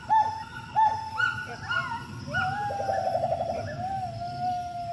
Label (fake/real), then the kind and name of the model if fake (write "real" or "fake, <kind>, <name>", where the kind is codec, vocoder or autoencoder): real